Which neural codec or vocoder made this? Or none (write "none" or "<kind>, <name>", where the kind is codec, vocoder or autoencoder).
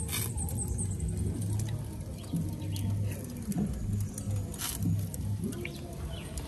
none